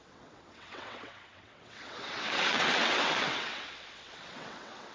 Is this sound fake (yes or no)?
yes